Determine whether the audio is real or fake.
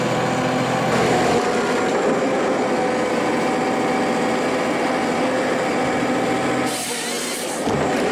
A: real